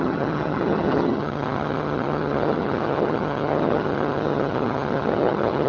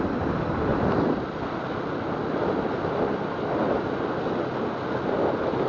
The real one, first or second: second